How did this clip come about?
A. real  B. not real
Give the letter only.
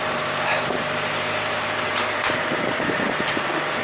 B